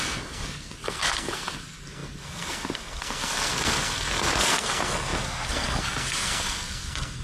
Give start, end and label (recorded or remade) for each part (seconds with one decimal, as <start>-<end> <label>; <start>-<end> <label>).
0.0-7.2 remade